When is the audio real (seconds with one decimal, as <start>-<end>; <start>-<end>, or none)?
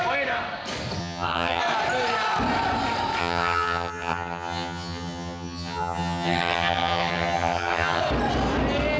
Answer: 0.0-1.0; 1.6-3.2; 8.0-9.0